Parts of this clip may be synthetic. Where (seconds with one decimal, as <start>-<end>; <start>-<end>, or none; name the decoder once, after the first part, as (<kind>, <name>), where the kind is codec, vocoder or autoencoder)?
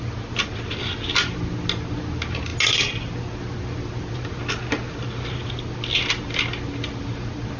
none